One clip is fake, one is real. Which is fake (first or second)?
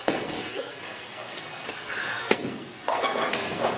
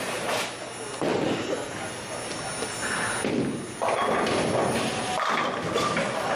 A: first